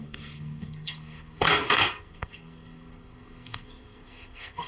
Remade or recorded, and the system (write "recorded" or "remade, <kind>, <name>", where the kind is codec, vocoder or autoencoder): remade, codec, SNAC